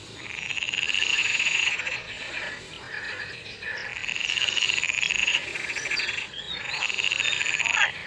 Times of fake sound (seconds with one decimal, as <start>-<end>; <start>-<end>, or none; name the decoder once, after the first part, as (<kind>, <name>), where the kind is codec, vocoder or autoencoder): 1.1-2.6 (vocoder, Vocos); 5.2-6.8